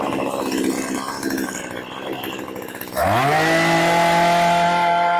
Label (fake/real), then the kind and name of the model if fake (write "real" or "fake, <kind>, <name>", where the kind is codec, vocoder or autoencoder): real